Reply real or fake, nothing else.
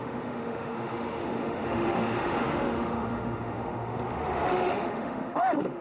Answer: fake